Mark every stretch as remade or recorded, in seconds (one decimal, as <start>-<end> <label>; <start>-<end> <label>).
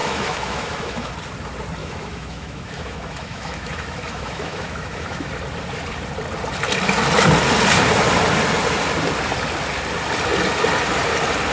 0.0-1.1 remade; 1.1-1.8 recorded; 1.8-5.3 remade; 5.3-11.5 recorded